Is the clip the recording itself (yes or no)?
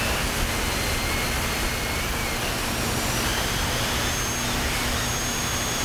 yes